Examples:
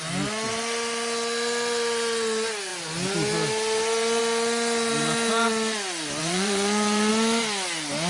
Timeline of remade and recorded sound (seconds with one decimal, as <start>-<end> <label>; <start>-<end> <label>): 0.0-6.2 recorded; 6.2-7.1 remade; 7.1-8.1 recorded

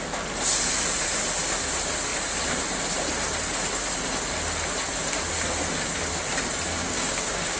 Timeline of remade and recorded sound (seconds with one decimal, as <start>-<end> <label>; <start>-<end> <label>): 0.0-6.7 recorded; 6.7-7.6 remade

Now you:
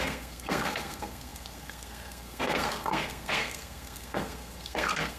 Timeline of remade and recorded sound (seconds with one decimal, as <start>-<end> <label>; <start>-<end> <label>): 0.0-5.2 remade